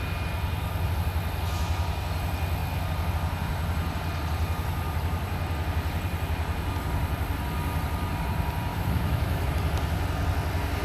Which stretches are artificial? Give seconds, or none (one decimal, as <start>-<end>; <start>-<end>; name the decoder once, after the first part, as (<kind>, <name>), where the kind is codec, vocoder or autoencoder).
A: 8.7-9.5 (autoencoder, DAC-VAE)